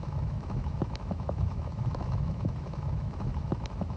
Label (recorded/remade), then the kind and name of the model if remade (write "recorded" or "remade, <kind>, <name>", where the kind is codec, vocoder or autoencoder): remade, autoencoder, DAC-VAE